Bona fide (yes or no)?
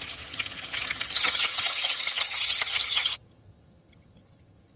no